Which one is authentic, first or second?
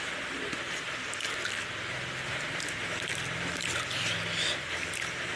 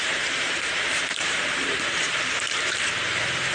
first